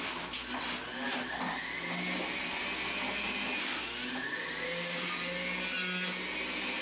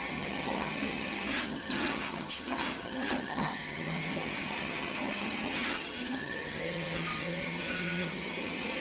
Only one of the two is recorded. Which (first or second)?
first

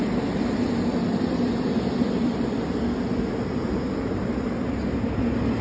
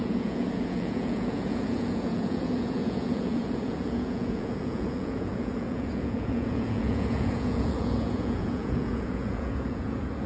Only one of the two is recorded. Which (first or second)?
first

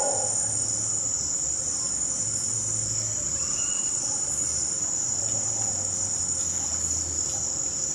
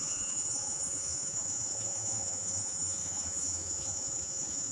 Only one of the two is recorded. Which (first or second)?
first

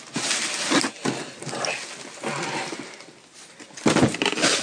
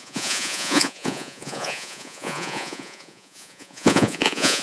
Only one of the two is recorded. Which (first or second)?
first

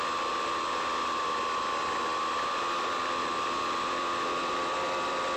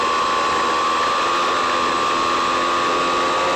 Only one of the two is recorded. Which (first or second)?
second